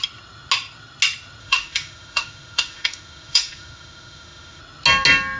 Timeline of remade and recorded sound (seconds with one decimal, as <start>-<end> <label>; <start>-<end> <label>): 0.0-1.4 recorded; 1.4-4.6 remade; 4.6-5.4 recorded